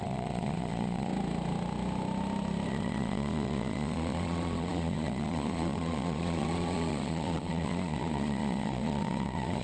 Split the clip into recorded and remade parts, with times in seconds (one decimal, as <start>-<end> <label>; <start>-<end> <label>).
0.0-1.1 remade; 1.1-2.7 recorded; 2.7-9.6 remade